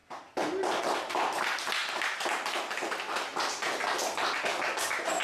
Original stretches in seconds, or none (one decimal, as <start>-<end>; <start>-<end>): 0.0-5.2